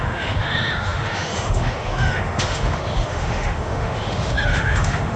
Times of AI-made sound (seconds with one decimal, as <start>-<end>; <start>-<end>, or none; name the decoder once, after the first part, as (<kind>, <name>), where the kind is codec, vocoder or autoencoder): 0.0-5.2 (autoencoder, DAC-VAE)